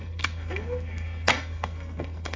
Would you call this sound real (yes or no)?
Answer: no